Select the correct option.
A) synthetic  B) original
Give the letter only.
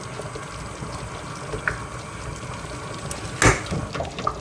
B